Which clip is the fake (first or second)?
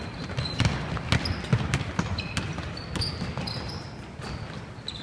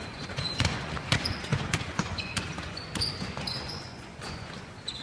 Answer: second